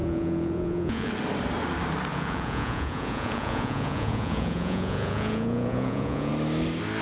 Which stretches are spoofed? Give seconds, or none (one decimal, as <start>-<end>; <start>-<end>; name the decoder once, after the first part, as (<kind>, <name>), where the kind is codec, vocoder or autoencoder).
0.0-1.1 (vocoder, Vocos); 2.1-6.3